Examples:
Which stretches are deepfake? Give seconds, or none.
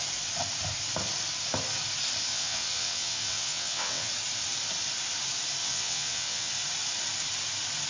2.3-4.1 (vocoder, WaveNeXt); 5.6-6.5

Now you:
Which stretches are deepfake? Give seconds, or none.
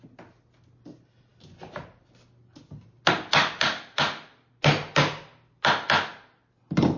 none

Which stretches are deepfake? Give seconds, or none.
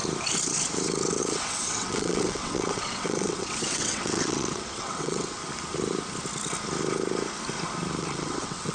1.2-5.4 (vocoder, WaveNeXt); 8.0-8.7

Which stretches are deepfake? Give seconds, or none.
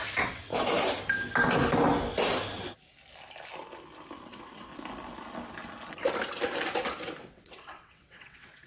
0.0-0.5 (vocoder, WaveNeXt); 4.3-4.7; 7.2-8.7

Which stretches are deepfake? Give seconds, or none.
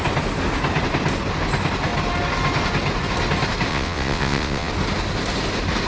3.7-4.7 (vocoder, WaveNeXt)